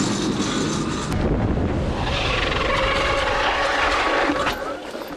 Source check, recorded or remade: recorded